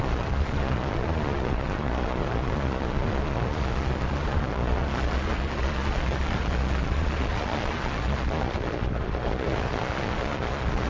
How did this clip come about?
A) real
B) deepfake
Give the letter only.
B